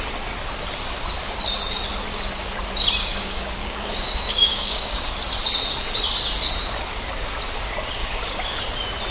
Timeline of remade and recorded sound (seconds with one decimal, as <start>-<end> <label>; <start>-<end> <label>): 0.0-3.0 recorded; 3.0-5.1 remade; 5.1-8.0 recorded; 8.0-8.6 remade; 8.6-9.1 recorded